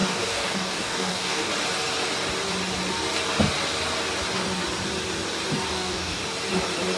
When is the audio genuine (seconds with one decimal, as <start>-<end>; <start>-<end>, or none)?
1.5-5.7; 6.2-7.0